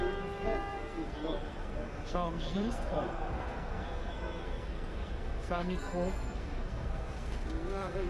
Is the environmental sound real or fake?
fake